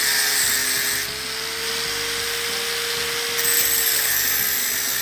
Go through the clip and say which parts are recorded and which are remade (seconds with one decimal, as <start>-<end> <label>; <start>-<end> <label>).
0.0-5.0 recorded